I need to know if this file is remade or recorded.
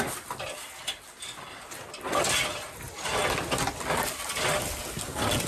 recorded